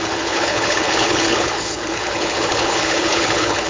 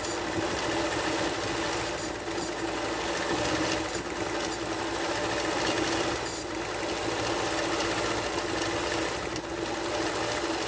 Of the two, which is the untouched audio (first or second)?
second